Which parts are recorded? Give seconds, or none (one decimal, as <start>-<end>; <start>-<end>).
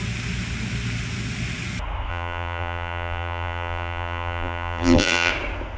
0.0-2.1; 5.3-5.8